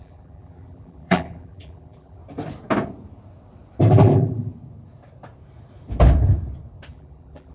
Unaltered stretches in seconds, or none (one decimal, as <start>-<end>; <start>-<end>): 2.2-3.9; 4.5-6.9